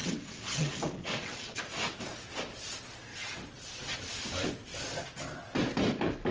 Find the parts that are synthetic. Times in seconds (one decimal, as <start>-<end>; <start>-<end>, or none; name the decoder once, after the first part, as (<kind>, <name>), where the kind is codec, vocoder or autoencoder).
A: 0.0-1.6 (vocoder, WaveNeXt); 3.1-3.6